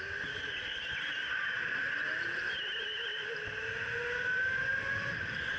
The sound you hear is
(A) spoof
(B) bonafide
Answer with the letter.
B